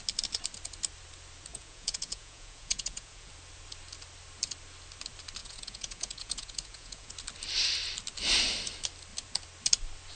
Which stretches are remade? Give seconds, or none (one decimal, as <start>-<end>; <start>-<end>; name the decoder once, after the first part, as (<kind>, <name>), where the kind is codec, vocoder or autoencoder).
1.5-3.3 (vocoder, Vocos); 5.4-7.1